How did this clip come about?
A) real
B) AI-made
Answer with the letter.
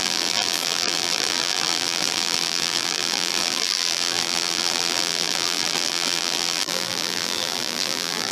B